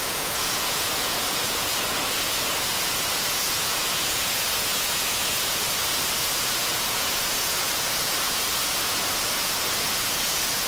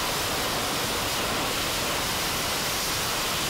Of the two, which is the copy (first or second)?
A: first